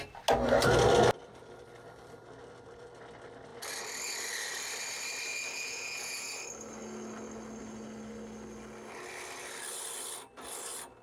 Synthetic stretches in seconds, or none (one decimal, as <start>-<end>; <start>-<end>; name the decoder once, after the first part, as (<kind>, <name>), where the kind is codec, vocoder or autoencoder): 5.3-6.3 (vocoder, Vocos)